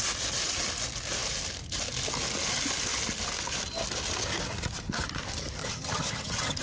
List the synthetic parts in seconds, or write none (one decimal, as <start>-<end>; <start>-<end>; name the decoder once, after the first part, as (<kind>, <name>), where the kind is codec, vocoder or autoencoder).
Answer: 5.6-6.6 (vocoder, HiFi-GAN)